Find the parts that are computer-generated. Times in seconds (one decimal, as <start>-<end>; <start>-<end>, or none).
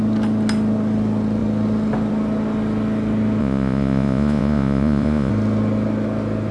3.4-5.3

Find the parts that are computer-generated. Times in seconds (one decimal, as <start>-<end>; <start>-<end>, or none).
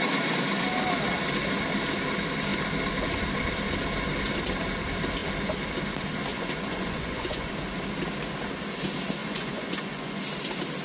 6.3-7.5; 9.2-10.2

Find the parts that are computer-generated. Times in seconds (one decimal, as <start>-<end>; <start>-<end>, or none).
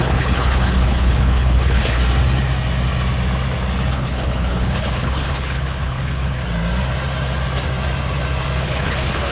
0.0-2.0; 3.9-6.4; 8.6-9.3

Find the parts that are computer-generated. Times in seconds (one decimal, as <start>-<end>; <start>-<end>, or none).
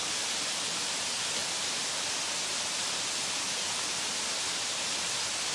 none